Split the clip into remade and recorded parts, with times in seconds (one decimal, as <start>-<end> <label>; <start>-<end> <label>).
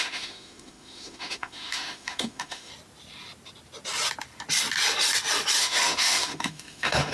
0.0-2.7 remade; 2.7-5.6 recorded; 5.6-7.1 remade